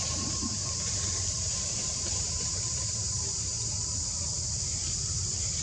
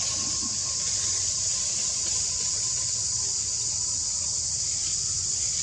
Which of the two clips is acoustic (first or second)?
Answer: second